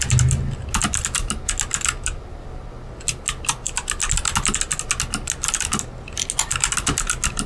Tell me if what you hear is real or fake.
real